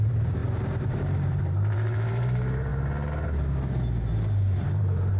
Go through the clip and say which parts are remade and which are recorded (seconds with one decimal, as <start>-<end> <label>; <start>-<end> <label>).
0.0-2.7 remade; 2.7-4.8 recorded; 4.8-5.2 remade